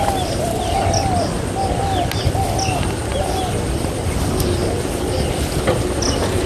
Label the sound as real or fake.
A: real